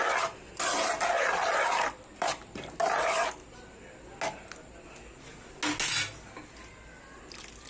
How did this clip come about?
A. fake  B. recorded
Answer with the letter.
B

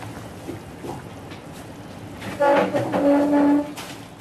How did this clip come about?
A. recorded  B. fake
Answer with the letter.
A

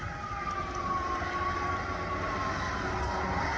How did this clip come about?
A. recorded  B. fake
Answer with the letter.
A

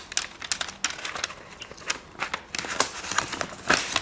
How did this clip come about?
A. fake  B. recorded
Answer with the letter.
B